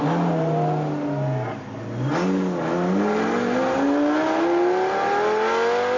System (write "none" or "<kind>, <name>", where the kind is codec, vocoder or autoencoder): none